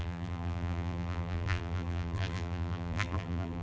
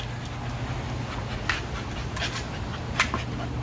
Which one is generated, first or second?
first